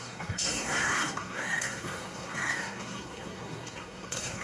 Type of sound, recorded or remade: remade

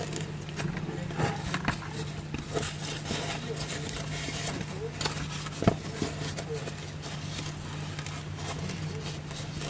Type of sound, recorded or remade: recorded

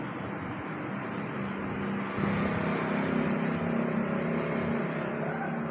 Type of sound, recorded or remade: recorded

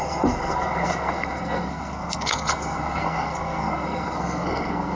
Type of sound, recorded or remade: remade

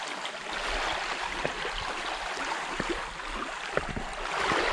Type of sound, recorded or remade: recorded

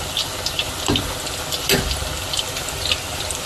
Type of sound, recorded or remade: recorded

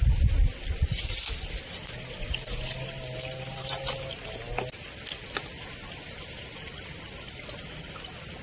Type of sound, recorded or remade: recorded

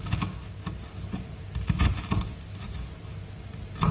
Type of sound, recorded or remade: recorded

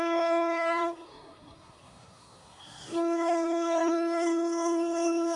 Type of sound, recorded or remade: remade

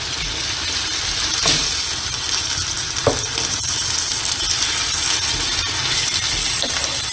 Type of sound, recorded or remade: recorded